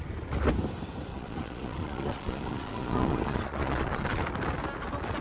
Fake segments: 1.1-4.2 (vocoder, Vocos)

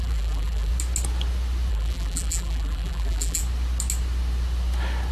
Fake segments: 0.0-0.7 (vocoder, BigVGAN v2); 1.7-3.4

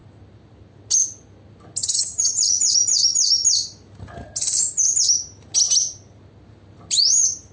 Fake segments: 1.8-2.6 (vocoder, HiFi-GAN)